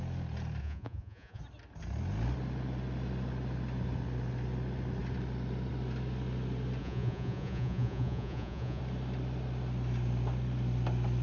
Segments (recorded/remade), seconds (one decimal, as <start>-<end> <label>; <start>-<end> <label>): 0.0-0.6 recorded; 0.6-1.4 remade; 1.4-6.8 recorded; 6.8-8.8 remade; 8.8-11.2 recorded